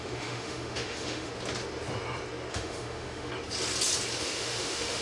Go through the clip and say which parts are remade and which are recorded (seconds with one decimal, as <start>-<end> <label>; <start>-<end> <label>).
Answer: 0.0-1.3 remade; 1.3-2.5 recorded; 2.5-3.3 remade; 3.3-4.2 recorded; 4.2-5.0 remade